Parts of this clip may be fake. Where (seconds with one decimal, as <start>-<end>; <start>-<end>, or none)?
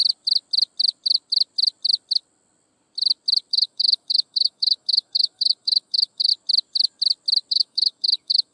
3.5-6.3; 7.5-8.5